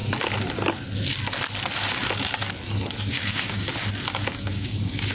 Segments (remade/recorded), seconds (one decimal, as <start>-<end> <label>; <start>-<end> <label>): 0.0-3.1 recorded; 3.1-3.7 remade; 3.7-4.5 recorded; 4.5-5.1 remade